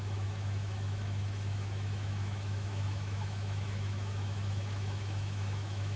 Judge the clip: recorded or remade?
remade